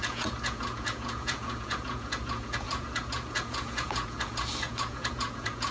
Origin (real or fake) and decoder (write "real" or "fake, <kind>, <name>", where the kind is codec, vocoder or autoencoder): fake, vocoder, Vocos